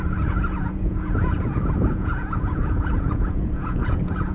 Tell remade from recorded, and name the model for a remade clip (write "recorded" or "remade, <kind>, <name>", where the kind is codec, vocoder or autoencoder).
remade, vocoder, Vocos